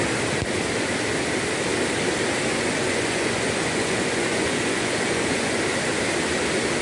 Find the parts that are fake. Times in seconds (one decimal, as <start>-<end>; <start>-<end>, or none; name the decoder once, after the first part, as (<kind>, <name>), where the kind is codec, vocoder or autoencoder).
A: 2.5-5.6 (vocoder, Vocos)